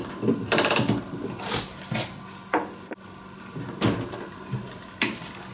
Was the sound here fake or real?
real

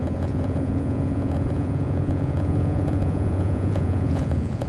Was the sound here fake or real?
fake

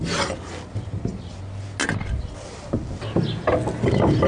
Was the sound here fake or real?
real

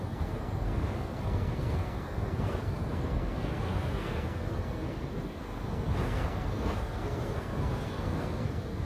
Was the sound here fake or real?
fake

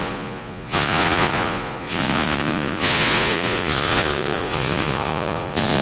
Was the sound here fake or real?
fake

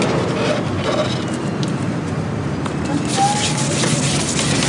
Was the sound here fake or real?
real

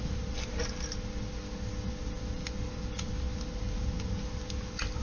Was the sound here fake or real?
real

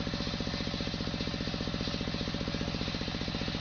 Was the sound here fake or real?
real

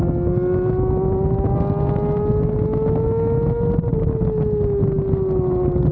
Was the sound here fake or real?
real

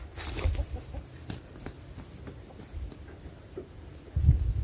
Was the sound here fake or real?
real